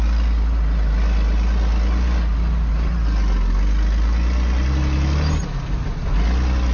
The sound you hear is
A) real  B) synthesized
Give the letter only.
A